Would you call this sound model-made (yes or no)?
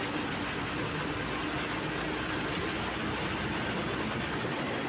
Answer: no